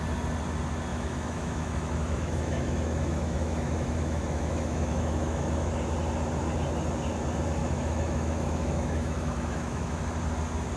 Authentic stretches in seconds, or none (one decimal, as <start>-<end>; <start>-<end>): 0.0-0.9; 5.7-7.6; 10.0-10.8